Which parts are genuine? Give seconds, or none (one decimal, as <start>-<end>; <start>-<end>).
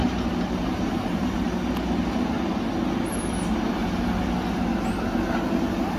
1.7-6.0